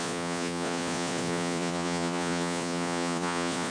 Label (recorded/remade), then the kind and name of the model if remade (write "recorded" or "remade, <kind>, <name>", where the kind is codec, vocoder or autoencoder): remade, vocoder, Vocos